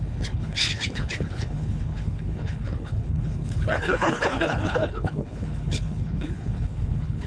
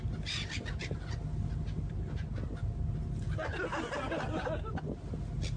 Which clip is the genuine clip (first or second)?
second